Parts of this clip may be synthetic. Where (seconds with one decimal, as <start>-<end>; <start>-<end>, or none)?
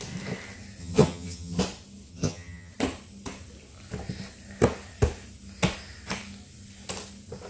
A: 0.8-1.6; 2.1-2.7